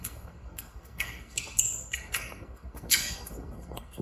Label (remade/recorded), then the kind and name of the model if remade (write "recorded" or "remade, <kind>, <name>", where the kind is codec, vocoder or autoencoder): remade, codec, SNAC